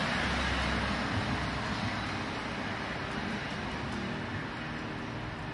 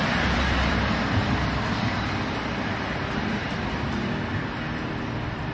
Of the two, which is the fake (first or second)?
second